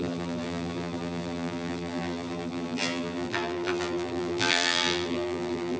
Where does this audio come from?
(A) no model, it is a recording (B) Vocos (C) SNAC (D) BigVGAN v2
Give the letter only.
D